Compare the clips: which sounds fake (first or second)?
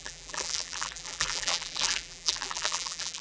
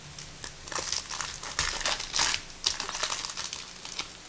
first